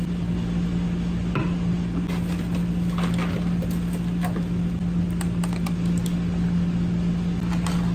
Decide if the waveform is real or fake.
real